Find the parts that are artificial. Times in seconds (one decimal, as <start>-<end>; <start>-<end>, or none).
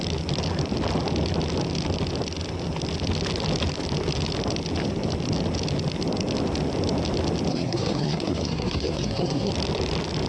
7.5-9.5